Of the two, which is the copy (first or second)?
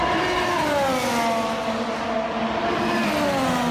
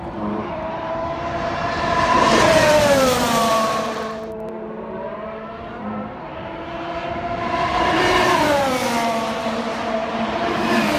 second